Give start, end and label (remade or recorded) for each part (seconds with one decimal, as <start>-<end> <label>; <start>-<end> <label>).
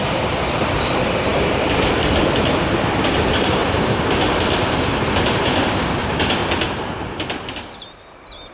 0.0-3.6 remade; 3.6-6.0 recorded; 6.0-6.4 remade; 6.4-7.5 recorded; 7.5-8.5 remade